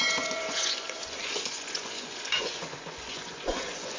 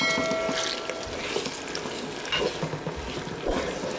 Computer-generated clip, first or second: first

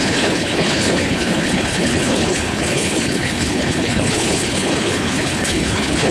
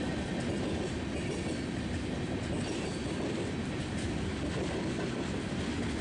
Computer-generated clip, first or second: first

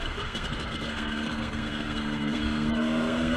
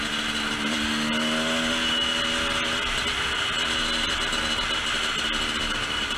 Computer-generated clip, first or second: first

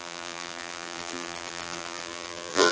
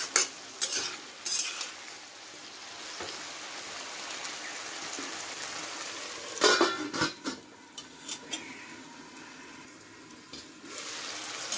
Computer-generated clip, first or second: first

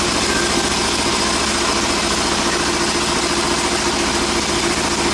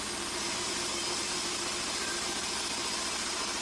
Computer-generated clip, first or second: second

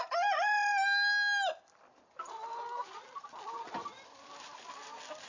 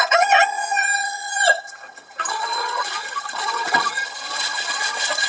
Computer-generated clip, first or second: second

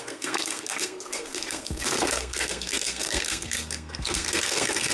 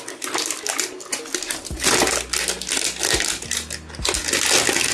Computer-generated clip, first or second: first